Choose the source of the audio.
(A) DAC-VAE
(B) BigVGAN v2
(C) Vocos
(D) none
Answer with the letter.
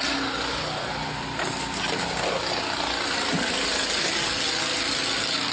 D